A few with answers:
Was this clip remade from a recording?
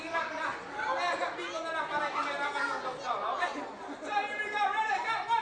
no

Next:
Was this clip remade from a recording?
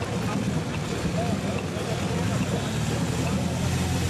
no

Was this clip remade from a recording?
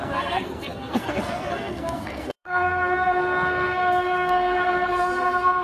yes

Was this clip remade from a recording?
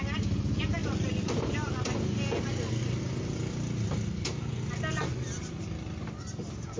no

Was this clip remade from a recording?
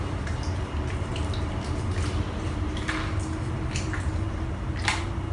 no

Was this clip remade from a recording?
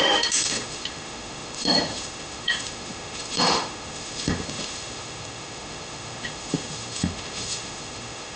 yes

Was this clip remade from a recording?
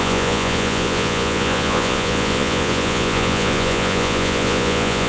yes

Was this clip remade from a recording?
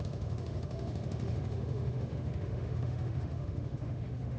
yes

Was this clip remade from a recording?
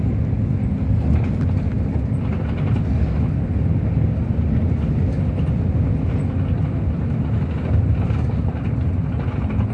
no